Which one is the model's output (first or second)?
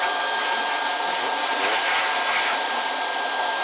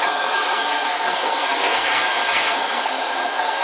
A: second